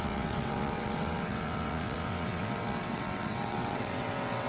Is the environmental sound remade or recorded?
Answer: remade